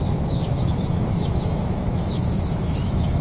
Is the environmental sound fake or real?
fake